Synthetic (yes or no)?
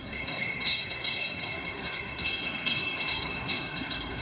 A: yes